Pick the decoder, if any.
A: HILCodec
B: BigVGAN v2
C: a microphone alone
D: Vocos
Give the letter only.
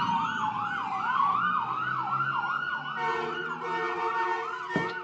C